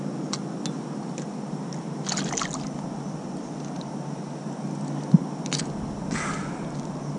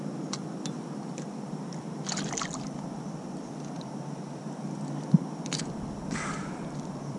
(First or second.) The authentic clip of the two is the first